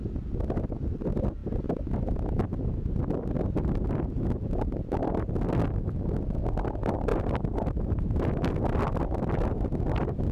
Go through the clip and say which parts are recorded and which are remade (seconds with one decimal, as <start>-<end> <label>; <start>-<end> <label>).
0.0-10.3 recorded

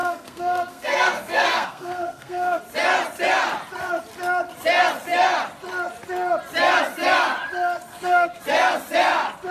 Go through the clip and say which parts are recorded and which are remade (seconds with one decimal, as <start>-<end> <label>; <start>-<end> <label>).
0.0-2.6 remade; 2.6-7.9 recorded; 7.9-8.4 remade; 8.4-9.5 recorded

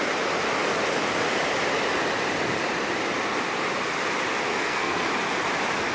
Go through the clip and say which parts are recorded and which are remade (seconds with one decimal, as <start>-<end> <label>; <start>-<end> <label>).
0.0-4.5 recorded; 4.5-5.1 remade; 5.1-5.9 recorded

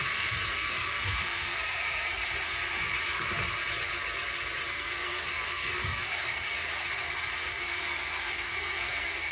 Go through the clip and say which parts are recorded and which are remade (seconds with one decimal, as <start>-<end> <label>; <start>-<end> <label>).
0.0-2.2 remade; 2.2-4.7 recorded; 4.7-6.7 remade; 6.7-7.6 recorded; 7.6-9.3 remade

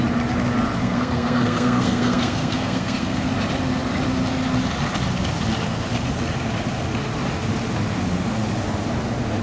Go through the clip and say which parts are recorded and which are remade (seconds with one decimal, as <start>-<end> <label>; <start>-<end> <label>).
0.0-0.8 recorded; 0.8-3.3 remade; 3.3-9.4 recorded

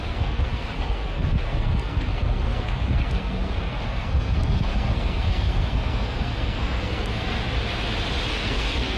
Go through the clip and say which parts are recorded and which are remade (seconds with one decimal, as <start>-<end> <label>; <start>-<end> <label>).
0.0-7.4 remade; 7.4-8.3 recorded; 8.3-9.0 remade

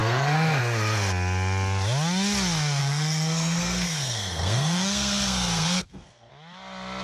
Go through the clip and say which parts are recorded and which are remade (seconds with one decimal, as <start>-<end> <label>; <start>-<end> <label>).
0.0-0.6 remade; 0.6-2.8 recorded; 2.8-6.3 remade; 6.3-7.0 recorded

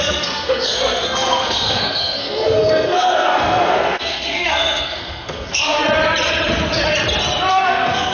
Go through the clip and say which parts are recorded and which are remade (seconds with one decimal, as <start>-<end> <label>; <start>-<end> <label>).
0.0-5.8 remade; 5.8-7.5 recorded; 7.5-8.1 remade